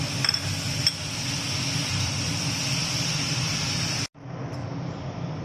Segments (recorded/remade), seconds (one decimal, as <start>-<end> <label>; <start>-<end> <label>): 0.0-1.8 recorded; 1.8-2.5 remade; 2.5-4.6 recorded; 4.6-5.4 remade